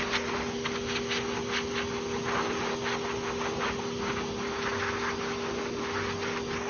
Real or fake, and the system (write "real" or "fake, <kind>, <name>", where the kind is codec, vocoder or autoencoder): real